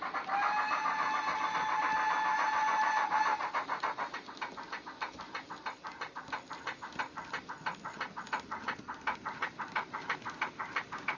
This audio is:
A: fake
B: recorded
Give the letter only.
B